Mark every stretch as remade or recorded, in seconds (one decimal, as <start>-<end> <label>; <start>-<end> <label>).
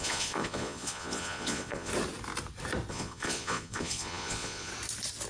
0.0-1.9 remade; 1.9-2.9 recorded; 2.9-4.7 remade; 4.7-5.3 recorded